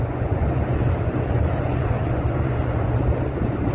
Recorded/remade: remade